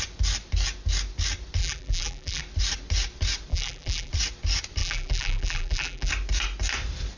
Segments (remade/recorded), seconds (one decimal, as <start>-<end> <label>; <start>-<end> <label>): 0.0-1.6 recorded; 1.6-2.4 remade; 2.4-3.5 recorded; 3.5-4.1 remade; 4.1-4.8 recorded; 4.8-6.1 remade; 6.1-7.2 recorded